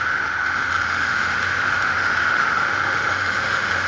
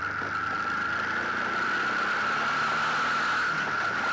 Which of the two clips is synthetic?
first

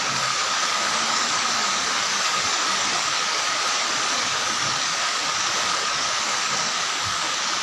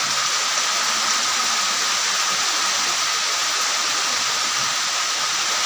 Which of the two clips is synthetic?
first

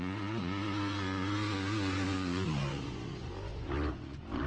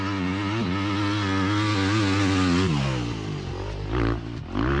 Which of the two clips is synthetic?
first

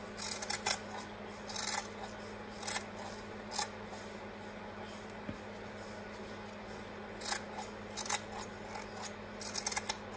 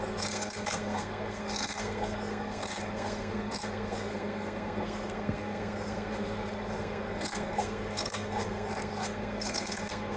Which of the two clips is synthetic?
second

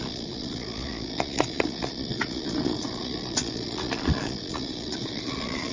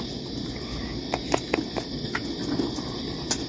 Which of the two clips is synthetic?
first